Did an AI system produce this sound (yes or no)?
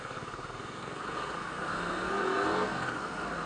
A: yes